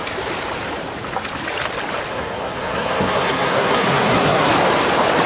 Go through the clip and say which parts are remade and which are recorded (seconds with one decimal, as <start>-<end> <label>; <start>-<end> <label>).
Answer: 0.0-2.1 recorded; 2.1-4.5 remade; 4.5-5.3 recorded